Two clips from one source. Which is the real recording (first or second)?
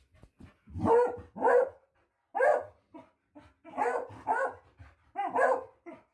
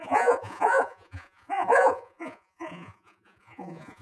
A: first